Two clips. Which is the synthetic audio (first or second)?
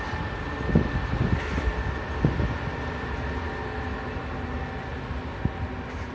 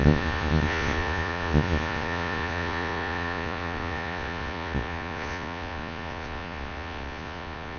second